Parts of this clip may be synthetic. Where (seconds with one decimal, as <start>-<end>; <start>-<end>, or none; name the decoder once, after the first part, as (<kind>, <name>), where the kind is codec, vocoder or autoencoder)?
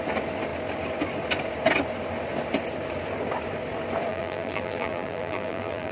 4.1-5.9 (vocoder, BigVGAN v2)